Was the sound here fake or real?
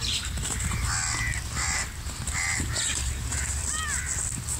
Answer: real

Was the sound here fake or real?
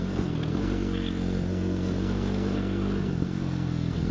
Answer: fake